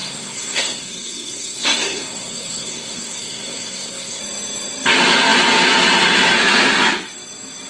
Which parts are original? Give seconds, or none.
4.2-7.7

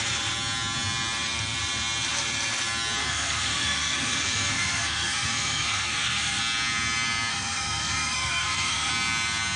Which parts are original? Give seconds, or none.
0.0-3.0; 6.4-7.3; 8.9-9.6

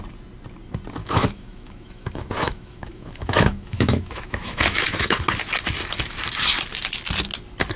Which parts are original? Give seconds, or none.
0.0-1.0; 5.2-7.8

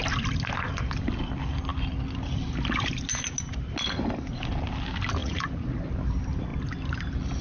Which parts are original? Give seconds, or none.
0.0-5.2; 5.8-7.4